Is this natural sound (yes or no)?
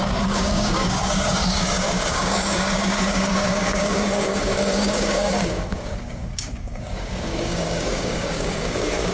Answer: no